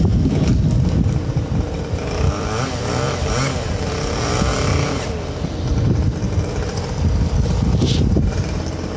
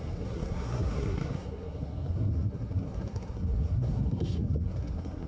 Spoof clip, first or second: second